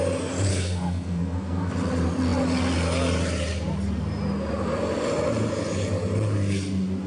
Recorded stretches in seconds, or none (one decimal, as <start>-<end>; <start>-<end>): 0.0-0.5; 1.7-7.1